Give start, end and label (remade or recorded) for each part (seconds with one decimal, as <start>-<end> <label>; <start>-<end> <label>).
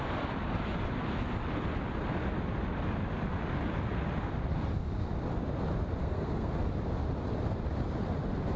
0.0-6.0 recorded; 6.0-6.5 remade; 6.5-8.6 recorded